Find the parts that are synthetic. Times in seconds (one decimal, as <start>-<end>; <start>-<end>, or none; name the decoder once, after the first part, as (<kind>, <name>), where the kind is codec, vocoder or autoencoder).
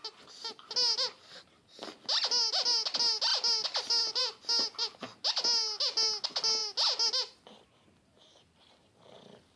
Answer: none